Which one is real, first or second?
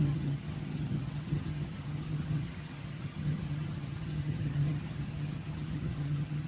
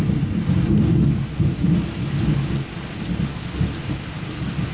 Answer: second